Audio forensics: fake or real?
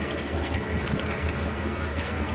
fake